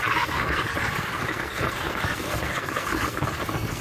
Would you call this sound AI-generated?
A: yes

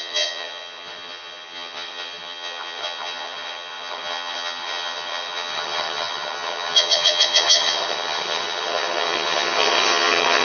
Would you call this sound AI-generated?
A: yes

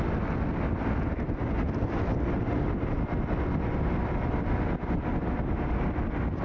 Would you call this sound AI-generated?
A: no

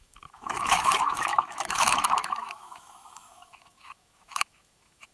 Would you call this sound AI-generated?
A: yes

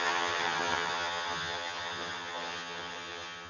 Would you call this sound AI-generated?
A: yes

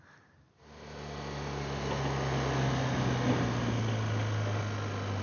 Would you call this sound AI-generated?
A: no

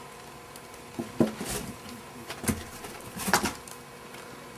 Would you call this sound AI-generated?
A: no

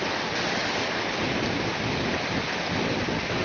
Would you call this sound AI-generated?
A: no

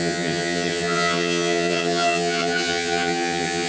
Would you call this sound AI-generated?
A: yes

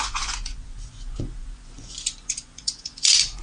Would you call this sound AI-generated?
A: yes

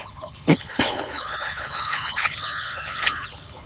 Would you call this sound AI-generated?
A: yes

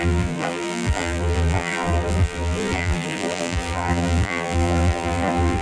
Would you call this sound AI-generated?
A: yes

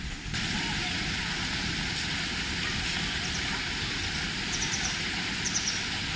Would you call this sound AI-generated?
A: no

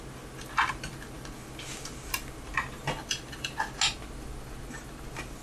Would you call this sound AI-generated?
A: no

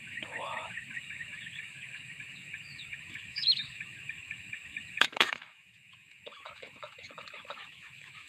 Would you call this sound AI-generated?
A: yes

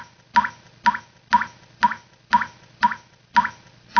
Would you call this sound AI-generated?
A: no